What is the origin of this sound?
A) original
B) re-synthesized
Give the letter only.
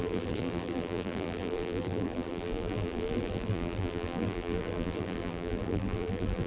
B